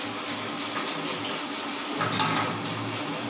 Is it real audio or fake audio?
real